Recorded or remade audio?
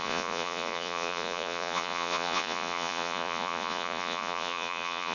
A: remade